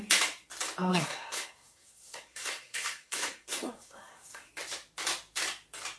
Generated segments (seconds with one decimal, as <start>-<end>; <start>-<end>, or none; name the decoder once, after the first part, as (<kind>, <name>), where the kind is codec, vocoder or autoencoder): 0.9-4.5 (codec, SNAC)